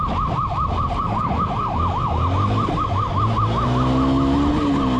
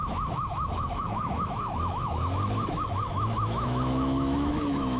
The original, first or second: first